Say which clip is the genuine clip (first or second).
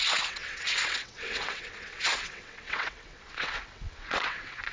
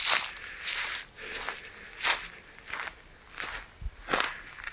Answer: second